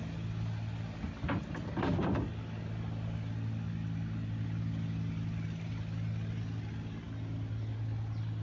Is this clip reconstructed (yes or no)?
no